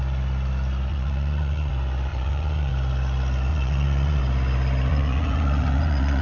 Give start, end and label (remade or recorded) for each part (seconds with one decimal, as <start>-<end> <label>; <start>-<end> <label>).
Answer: 0.0-0.9 recorded; 0.9-1.7 remade; 1.7-2.1 recorded; 2.1-2.7 remade; 2.7-3.5 recorded; 3.5-4.2 remade; 4.2-4.9 recorded; 4.9-6.2 remade